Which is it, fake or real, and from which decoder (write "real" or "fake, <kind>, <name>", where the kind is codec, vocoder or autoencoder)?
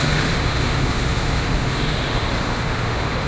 fake, autoencoder, DAC-VAE